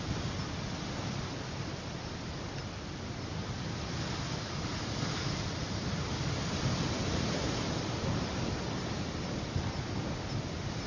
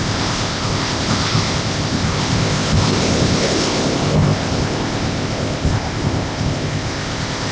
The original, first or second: first